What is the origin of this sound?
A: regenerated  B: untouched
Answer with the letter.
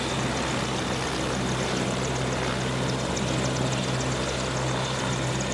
B